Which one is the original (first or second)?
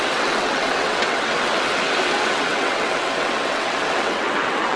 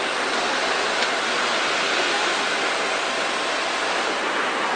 second